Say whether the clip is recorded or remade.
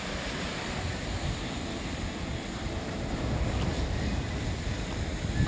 recorded